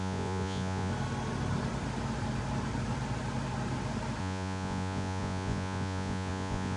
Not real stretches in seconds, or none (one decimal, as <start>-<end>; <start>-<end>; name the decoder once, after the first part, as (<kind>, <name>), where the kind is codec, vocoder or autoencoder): 0.0-0.9 (vocoder, Vocos); 4.2-6.8